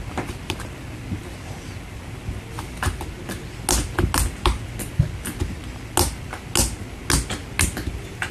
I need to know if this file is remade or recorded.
recorded